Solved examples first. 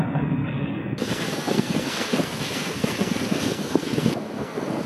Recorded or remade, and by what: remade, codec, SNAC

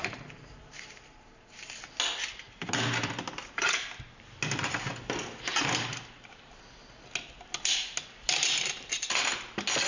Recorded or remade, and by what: recorded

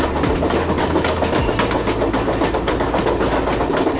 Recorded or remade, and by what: recorded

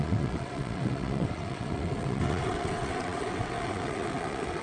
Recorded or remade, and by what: remade, vocoder, WaveNeXt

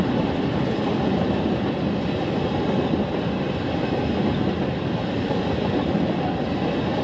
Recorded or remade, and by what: recorded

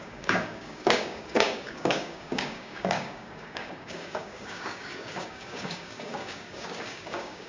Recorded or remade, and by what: remade, codec, DAC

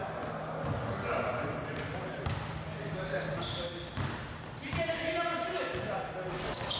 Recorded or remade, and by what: recorded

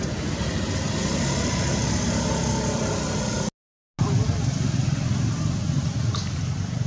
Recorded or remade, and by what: recorded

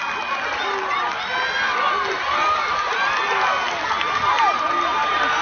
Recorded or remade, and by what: recorded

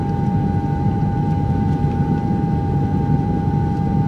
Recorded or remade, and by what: remade, vocoder, BigVGAN v2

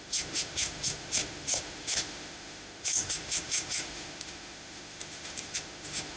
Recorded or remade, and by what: remade, autoencoder, DAC-VAE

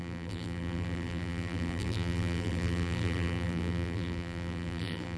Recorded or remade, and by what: remade, vocoder, BigVGAN v2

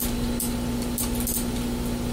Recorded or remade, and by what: recorded